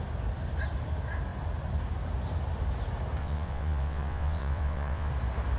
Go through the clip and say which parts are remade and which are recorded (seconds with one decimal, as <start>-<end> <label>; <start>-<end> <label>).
0.0-3.2 recorded; 3.2-5.1 remade; 5.1-5.6 recorded